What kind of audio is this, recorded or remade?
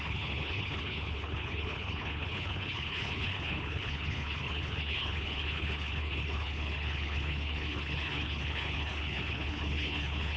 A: remade